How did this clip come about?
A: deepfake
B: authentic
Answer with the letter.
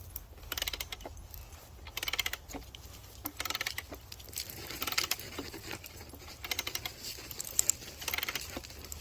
B